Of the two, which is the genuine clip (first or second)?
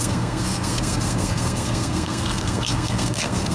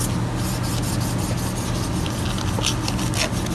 second